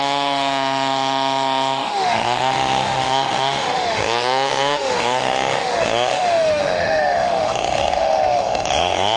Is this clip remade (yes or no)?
yes